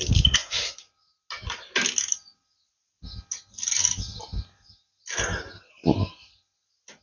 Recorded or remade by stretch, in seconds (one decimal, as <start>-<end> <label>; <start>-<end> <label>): 0.0-7.0 recorded